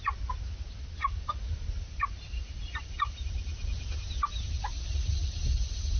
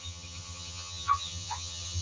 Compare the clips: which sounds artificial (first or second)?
second